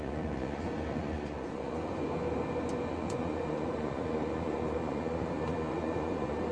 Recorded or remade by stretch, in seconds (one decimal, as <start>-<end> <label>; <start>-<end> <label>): 0.0-1.9 remade; 1.9-2.9 recorded; 2.9-6.5 remade